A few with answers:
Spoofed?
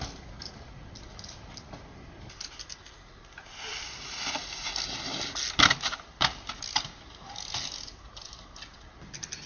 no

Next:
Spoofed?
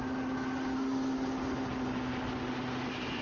no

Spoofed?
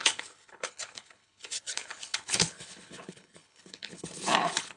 yes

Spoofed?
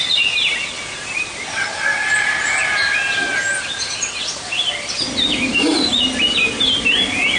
no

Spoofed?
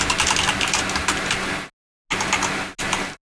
no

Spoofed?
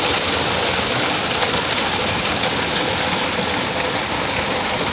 no